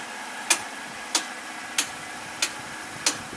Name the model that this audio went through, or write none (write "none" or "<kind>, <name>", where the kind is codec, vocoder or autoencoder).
none